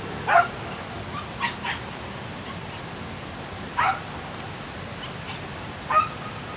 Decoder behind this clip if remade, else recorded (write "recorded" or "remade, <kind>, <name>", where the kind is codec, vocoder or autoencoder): recorded